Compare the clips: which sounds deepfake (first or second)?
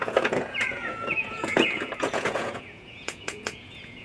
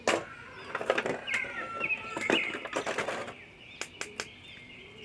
first